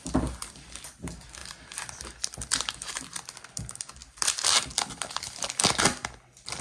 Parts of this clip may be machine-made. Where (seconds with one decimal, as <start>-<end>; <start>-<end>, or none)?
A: 1.4-2.0; 4.0-5.7